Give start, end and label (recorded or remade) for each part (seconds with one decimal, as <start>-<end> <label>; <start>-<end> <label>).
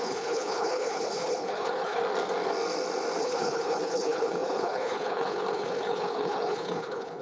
0.0-2.0 remade; 2.0-3.2 recorded; 3.2-7.2 remade